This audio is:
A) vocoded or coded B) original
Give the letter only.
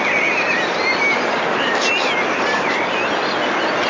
B